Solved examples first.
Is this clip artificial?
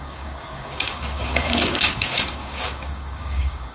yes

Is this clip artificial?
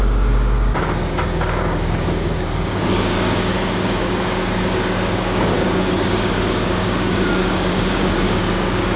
yes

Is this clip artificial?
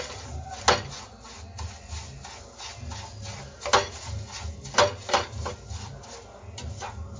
no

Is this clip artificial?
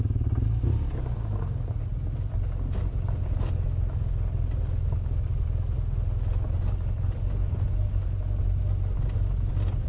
no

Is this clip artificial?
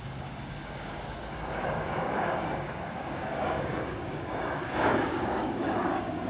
yes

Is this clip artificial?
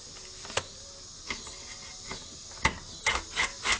no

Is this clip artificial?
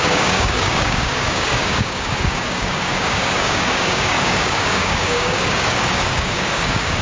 yes